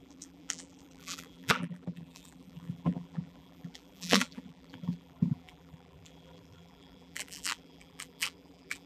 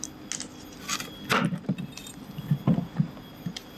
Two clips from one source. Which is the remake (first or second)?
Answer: first